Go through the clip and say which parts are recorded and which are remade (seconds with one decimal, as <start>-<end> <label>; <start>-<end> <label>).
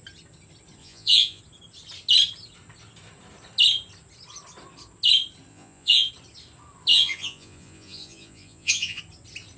0.0-0.8 recorded; 0.8-1.4 remade; 1.4-5.5 recorded; 5.5-6.1 remade; 6.1-6.9 recorded; 6.9-9.0 remade; 9.0-9.6 recorded